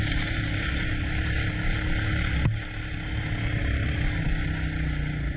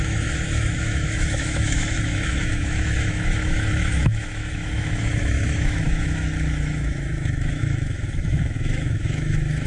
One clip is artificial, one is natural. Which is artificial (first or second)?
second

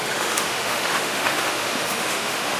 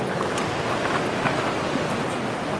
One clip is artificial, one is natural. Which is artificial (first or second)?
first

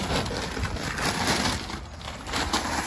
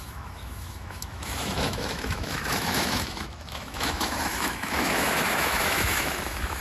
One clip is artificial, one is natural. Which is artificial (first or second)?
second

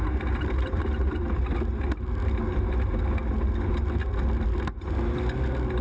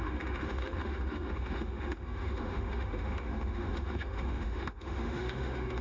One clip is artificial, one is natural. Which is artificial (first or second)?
second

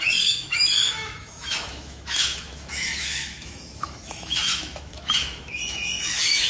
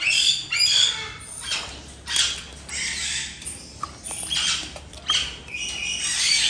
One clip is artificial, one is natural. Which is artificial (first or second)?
first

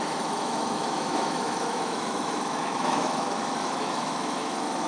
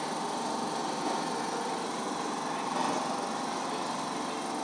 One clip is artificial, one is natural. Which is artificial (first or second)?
first